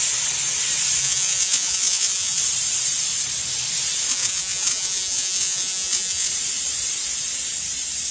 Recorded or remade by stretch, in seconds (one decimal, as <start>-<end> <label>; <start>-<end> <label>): 0.0-1.0 recorded; 1.0-2.4 remade; 2.4-4.1 recorded; 4.1-6.3 remade; 6.3-8.1 recorded